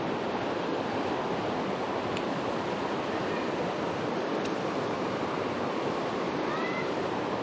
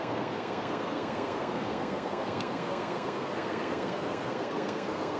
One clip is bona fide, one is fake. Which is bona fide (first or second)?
first